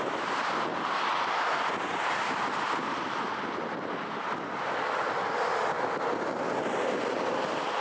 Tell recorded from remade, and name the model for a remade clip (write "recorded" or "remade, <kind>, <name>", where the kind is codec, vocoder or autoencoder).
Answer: recorded